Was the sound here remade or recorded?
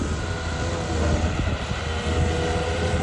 recorded